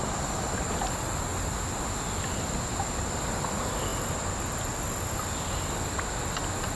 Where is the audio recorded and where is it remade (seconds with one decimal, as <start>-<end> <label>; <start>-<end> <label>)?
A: 0.0-6.8 recorded